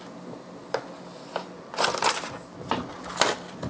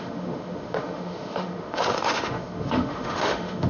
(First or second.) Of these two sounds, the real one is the first